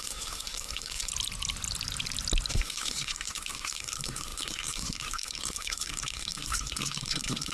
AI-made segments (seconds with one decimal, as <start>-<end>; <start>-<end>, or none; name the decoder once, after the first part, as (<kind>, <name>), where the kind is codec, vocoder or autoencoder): 0.0-1.1 (codec, SNAC); 2.5-7.5